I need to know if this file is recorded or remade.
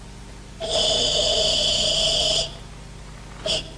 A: recorded